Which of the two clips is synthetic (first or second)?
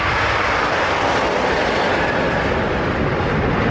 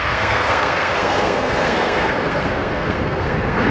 second